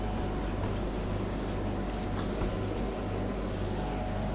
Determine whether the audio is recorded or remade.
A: recorded